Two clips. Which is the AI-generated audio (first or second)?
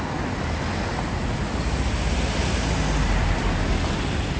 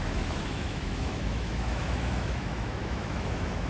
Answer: second